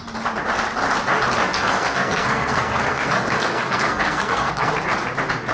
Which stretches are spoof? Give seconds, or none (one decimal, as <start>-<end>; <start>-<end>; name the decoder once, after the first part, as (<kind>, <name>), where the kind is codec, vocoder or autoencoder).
1.4-4.7 (codec, SNAC)